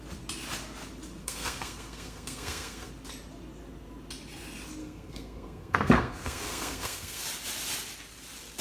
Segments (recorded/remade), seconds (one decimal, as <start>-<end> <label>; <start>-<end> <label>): 0.0-1.2 recorded; 1.2-2.9 remade; 2.9-4.8 recorded; 4.8-7.2 remade; 7.2-8.6 recorded